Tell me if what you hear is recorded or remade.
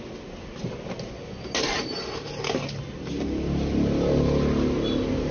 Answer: recorded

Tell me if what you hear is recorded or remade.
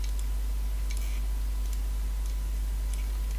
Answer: recorded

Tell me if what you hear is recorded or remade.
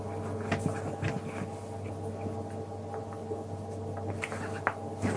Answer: recorded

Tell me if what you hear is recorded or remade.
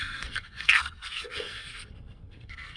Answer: remade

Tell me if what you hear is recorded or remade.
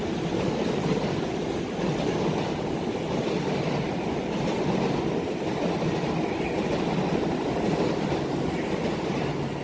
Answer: recorded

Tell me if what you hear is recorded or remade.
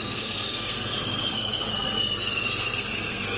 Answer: remade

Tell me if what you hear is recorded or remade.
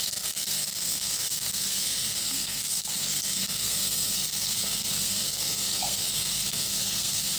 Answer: remade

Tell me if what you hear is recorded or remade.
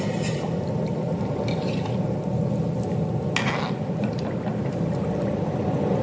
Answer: recorded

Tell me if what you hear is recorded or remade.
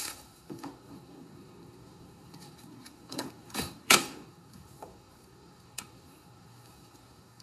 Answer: remade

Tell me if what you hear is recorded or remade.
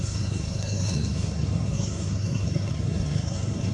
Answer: remade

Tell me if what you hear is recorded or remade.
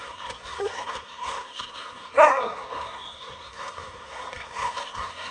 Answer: remade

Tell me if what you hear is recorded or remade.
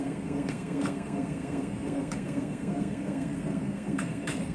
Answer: remade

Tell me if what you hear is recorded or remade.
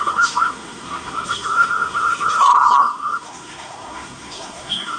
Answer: remade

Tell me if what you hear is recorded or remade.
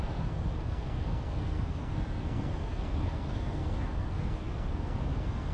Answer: remade